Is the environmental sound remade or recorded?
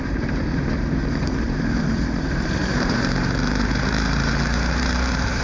remade